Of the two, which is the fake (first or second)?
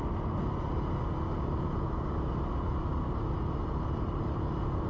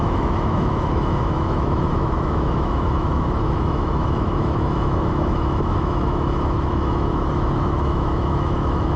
second